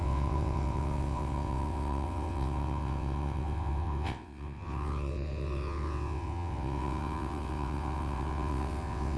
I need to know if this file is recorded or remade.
remade